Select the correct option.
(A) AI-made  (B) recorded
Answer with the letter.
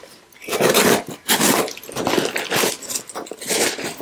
B